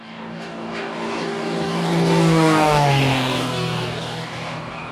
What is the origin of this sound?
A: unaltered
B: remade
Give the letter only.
B